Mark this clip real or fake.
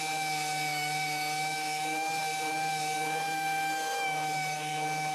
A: fake